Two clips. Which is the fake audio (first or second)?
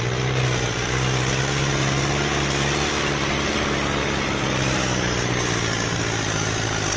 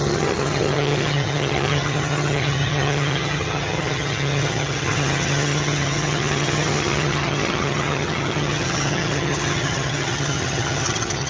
second